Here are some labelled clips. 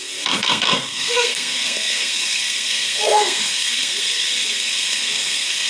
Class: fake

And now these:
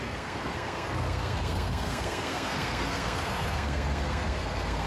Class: fake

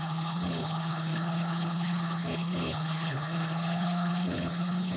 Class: fake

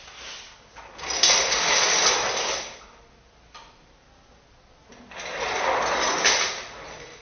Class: real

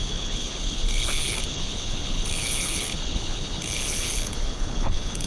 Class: fake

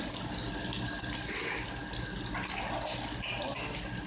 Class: real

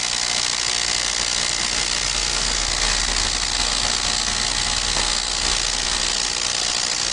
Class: real